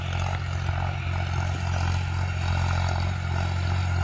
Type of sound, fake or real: real